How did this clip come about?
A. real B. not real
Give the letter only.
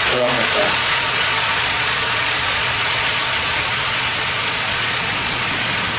B